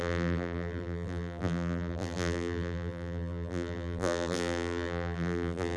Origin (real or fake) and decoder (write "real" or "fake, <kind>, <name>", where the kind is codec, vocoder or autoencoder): fake, vocoder, BigVGAN v2